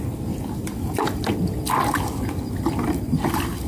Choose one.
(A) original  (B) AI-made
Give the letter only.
A